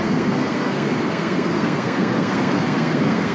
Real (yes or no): no